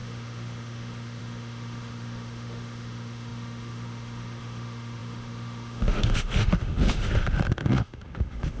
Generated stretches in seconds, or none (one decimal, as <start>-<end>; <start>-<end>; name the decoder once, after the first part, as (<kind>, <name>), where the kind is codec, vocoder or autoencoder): 0.0-8.6 (autoencoder, DAC-VAE)